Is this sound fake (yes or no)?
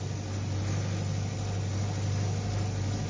no